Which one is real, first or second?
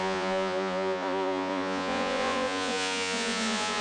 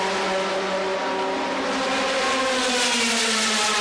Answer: second